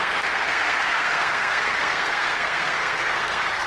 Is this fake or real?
fake